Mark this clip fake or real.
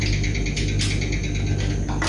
real